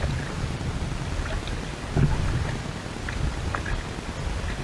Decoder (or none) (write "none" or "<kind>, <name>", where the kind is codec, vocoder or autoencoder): none